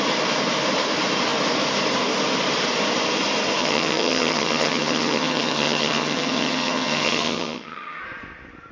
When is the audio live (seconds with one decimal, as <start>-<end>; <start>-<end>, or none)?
0.0-3.6; 8.0-8.7